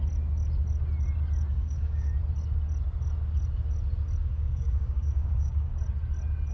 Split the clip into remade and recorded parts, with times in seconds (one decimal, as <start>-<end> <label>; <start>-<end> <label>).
0.0-1.5 recorded; 1.5-2.1 remade; 2.1-4.2 recorded; 4.2-5.7 remade; 5.7-6.5 recorded